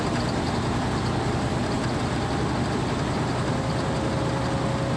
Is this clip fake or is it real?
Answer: real